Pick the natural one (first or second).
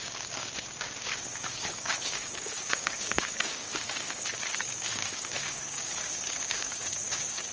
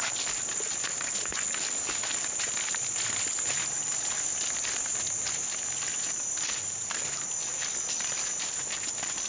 second